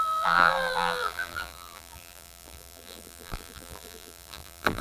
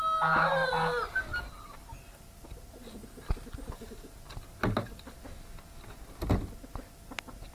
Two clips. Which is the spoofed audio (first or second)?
first